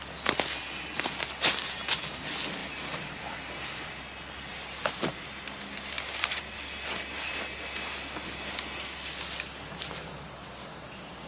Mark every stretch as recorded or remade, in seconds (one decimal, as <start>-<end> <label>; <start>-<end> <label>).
0.0-2.6 recorded; 2.6-3.2 remade; 3.2-4.5 recorded; 4.5-6.4 remade; 6.4-11.3 recorded